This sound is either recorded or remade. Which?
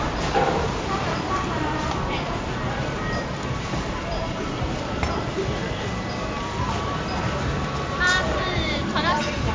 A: remade